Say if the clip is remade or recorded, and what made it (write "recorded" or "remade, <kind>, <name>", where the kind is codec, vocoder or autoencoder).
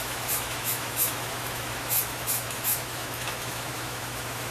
remade, autoencoder, DAC-VAE